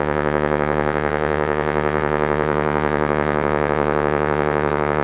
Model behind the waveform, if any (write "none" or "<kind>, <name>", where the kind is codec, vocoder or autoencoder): vocoder, Vocos